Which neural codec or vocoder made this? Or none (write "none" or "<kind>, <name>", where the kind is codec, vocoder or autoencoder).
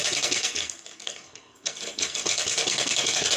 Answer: codec, SNAC